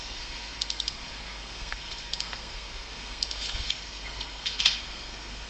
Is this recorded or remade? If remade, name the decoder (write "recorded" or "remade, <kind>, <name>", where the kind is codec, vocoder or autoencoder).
remade, codec, SNAC